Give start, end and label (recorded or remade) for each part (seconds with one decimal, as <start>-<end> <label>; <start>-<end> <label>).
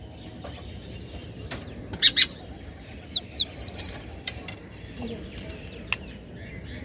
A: 0.0-6.8 recorded